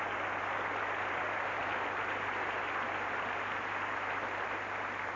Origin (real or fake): real